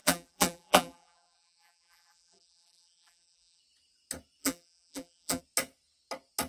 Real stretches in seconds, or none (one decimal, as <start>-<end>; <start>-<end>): 3.6-4.4; 5.4-6.5